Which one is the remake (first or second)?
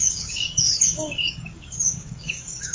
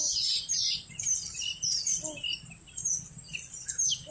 first